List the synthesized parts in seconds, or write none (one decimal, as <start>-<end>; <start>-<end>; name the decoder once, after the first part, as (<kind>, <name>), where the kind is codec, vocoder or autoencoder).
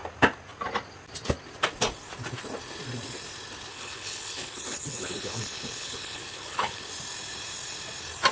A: 3.7-6.9 (codec, HILCodec)